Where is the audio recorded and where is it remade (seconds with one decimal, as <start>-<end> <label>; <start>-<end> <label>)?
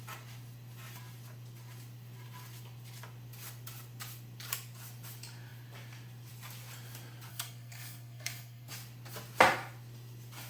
0.0-7.3 recorded; 7.3-8.7 remade; 8.7-10.5 recorded